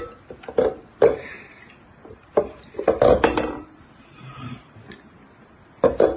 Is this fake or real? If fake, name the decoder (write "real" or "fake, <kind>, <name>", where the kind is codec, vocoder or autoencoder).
fake, vocoder, BigVGAN v2